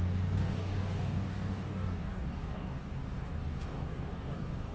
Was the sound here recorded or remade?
remade